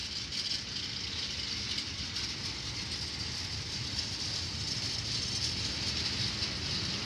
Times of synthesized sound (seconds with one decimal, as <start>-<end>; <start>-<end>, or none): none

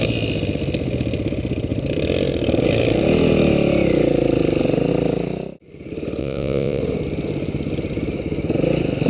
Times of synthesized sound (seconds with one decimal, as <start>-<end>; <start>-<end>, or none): 6.2-6.8

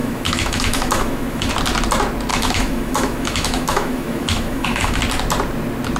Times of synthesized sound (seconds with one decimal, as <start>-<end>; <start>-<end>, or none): 0.0-1.5; 2.3-5.0

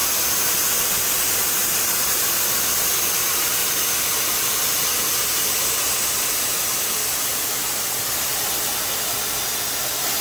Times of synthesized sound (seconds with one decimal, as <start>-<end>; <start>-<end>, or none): 0.0-1.5